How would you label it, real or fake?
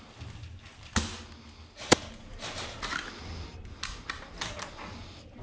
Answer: real